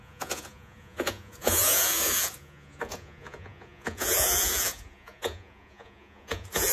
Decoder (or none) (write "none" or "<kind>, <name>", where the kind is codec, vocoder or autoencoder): vocoder, Vocos